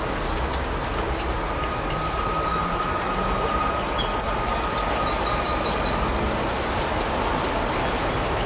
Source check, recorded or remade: recorded